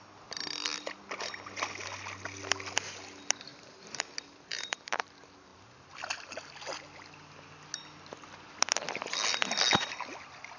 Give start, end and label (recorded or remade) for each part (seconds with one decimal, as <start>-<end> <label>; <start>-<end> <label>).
0.0-3.5 recorded; 3.5-4.0 remade; 4.0-4.5 recorded; 4.5-5.1 remade; 5.1-10.6 recorded